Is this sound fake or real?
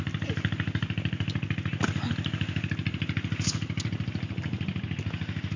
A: real